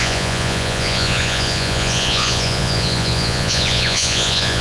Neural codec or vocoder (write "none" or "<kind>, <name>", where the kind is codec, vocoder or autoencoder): vocoder, Vocos